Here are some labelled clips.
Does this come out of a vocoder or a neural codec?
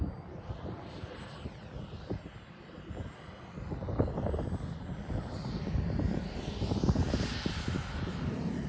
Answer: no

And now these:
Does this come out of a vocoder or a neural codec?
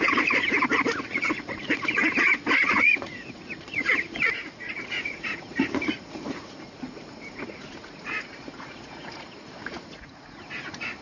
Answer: yes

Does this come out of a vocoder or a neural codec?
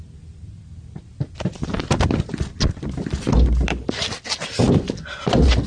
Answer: no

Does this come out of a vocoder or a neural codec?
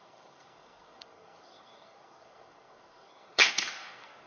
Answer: yes